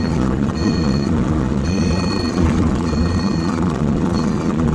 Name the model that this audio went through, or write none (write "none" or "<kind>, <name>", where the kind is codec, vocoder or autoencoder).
vocoder, Vocos